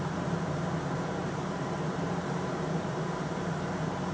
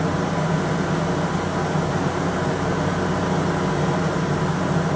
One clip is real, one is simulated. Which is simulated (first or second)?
first